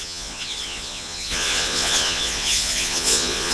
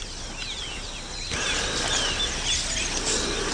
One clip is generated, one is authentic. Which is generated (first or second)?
first